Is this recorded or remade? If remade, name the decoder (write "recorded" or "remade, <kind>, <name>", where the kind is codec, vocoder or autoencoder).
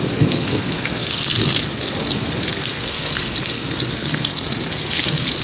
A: remade, codec, SNAC